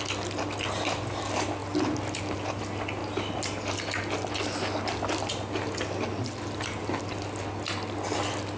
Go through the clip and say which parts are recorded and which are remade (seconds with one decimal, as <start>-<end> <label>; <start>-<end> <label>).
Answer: 0.0-8.6 recorded